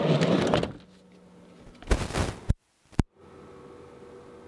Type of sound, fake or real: real